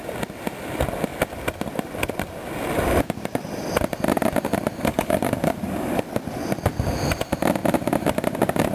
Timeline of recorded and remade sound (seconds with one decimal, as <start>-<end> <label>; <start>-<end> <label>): 0.0-4.9 recorded; 4.9-6.1 remade; 6.1-8.7 recorded

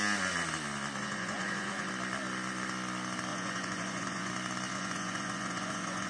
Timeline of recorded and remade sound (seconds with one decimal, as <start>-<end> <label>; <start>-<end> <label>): 0.0-1.0 recorded; 1.0-1.9 remade; 1.9-3.3 recorded; 3.3-4.3 remade; 4.3-4.7 recorded; 4.7-6.1 remade